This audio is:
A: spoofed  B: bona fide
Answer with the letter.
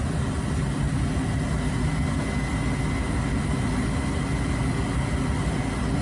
B